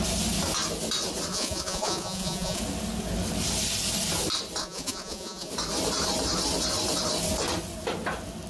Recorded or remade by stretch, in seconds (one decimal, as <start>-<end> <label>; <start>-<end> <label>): 0.0-1.3 recorded; 1.3-2.6 remade; 2.6-4.6 recorded; 4.6-5.5 remade; 5.5-8.5 recorded